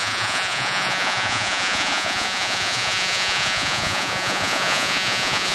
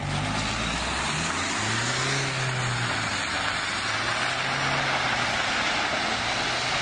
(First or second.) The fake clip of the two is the first